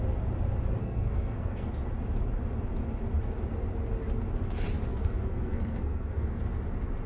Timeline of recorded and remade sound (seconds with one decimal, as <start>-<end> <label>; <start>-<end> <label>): 0.0-0.8 recorded; 0.8-1.7 remade; 1.7-4.9 recorded; 4.9-6.4 remade; 6.4-7.1 recorded